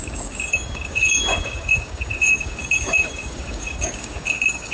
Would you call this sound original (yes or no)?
no